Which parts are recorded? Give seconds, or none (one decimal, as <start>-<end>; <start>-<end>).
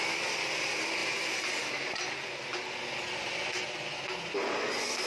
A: 0.0-5.1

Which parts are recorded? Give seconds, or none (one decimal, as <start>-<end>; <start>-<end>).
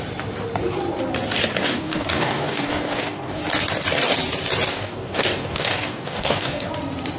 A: 0.0-1.6; 3.4-4.7; 6.7-7.2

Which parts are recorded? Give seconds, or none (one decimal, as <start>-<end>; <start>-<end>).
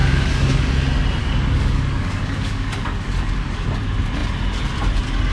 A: 0.7-1.2; 3.7-5.3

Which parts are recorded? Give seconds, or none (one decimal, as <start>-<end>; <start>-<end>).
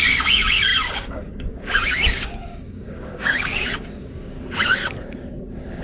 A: none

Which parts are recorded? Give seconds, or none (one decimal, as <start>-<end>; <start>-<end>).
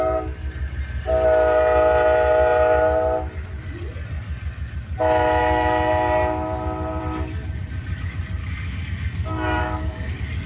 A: 0.0-8.4; 10.1-10.5